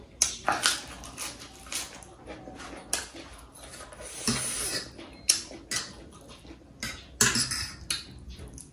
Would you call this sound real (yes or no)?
yes